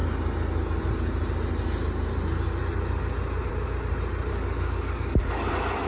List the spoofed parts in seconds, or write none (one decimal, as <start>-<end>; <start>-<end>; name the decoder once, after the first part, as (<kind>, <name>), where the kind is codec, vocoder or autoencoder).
4.3-5.5 (codec, DAC)